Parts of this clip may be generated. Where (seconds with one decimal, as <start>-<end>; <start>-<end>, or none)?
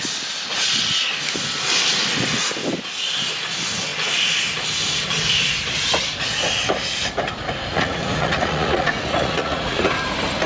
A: 7.7-9.9